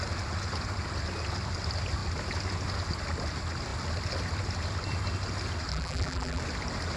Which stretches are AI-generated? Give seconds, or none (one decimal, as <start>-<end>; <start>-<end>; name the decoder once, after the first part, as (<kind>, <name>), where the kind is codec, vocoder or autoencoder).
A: 5.7-6.4 (vocoder, BigVGAN v2)